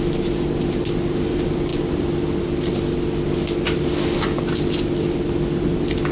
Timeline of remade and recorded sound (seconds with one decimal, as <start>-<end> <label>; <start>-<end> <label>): 0.0-6.1 recorded